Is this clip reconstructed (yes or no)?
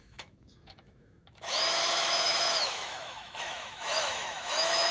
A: yes